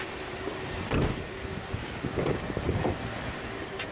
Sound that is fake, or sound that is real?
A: real